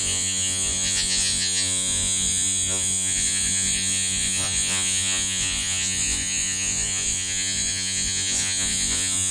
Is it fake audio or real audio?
fake